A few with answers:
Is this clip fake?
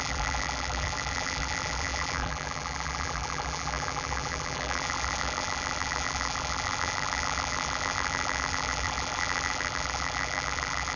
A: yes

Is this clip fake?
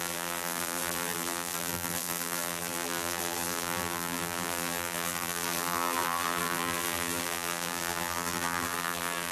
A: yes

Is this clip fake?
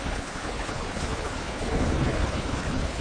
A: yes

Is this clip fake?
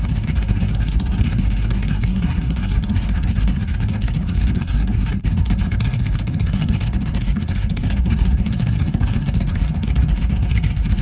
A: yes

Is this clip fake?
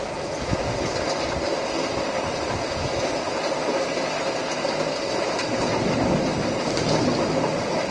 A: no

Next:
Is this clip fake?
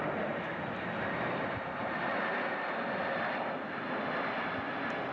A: no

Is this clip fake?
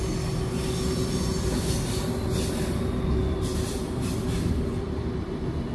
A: no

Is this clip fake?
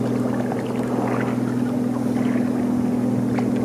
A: no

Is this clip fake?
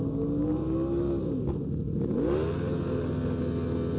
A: no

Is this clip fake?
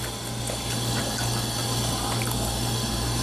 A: no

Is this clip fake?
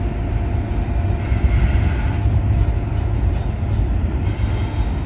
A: no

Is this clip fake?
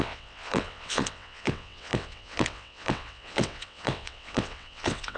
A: yes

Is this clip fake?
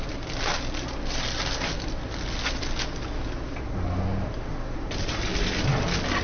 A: no